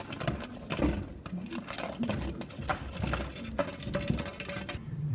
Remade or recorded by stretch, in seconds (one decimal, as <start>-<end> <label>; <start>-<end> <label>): 0.0-5.1 recorded